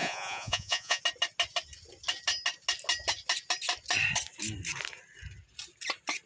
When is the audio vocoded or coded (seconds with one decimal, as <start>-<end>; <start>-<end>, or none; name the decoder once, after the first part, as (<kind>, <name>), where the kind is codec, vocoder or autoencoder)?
0.0-1.0 (vocoder, Vocos)